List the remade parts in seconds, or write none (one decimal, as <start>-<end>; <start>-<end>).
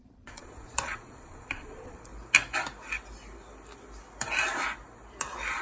0.0-2.1